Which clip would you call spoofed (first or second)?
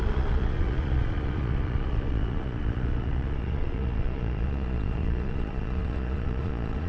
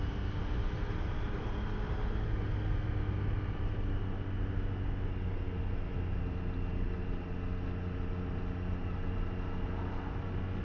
first